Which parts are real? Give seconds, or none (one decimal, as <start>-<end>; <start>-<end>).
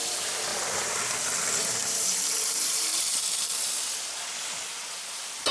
0.5-1.6; 2.9-5.5